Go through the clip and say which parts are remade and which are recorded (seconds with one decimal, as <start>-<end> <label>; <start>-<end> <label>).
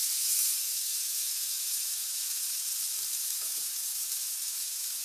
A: 0.0-2.7 remade; 2.7-3.2 recorded; 3.2-5.0 remade